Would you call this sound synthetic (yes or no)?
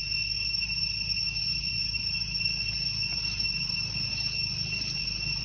no